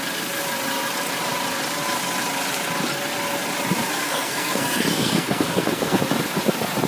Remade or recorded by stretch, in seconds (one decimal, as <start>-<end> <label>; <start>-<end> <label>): 0.0-4.0 recorded; 4.0-6.0 remade; 6.0-6.9 recorded